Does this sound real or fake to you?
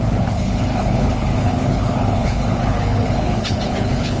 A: fake